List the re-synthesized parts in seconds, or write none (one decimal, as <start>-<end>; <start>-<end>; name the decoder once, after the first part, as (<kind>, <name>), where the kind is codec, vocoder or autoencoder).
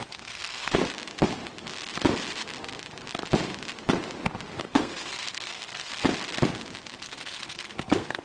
0.0-0.8 (codec, SNAC); 4.6-5.9; 7.0-8.2